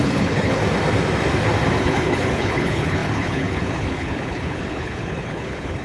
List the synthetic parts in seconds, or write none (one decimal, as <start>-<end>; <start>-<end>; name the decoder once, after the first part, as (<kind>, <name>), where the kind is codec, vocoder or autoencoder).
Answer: 0.0-0.6 (codec, HILCodec); 1.8-5.8